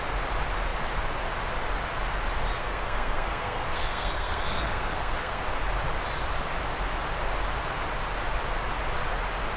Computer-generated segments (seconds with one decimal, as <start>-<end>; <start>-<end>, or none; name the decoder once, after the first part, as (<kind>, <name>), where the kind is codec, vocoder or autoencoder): 2.6-5.4 (codec, SNAC)